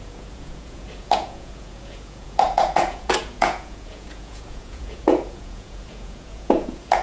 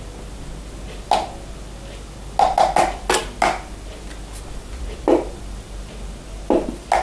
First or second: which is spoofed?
first